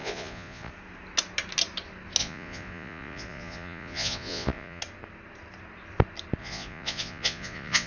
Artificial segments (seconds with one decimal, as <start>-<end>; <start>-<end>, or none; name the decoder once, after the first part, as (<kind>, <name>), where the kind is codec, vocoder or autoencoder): 0.0-0.7 (vocoder, Vocos); 2.2-4.8; 6.4-7.9

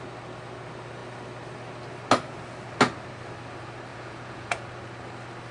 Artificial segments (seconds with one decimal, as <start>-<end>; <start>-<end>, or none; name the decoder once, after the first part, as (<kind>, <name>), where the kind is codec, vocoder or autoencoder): 3.9-4.6 (vocoder, Vocos)

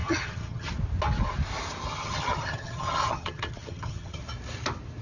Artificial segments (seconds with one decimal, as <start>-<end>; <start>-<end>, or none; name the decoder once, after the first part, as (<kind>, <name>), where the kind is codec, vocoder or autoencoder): 0.0-0.7 (vocoder, HiFi-GAN); 1.9-4.2